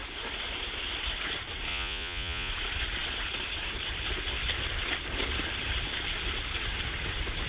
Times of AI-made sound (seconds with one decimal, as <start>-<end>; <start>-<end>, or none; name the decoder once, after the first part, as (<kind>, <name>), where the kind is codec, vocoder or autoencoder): 1.7-2.5 (vocoder, Vocos)

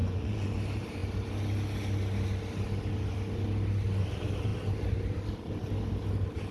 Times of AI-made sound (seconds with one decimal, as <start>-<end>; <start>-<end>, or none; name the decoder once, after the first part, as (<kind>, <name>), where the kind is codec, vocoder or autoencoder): 0.0-0.6 (vocoder, Vocos)

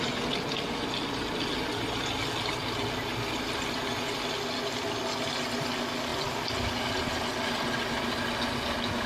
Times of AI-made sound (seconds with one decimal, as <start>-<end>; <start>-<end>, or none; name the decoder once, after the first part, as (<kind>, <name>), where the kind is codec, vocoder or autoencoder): none

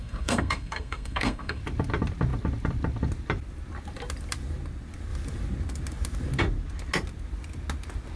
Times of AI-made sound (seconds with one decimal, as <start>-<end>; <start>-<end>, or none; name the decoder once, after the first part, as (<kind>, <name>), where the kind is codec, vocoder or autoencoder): 0.0-1.6 (codec, SNAC)

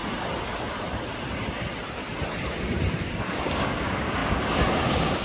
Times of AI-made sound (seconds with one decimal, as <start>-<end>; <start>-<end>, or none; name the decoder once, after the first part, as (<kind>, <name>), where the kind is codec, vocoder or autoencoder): 3.1-5.2 (codec, DAC)

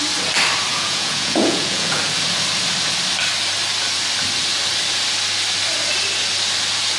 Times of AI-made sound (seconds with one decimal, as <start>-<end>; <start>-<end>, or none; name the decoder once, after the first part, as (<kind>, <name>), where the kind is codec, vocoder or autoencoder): 0.7-2.0 (vocoder, Vocos)